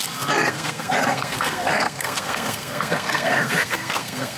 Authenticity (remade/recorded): remade